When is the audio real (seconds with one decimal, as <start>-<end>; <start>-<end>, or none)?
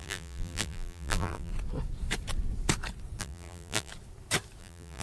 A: 1.5-3.2; 3.9-4.6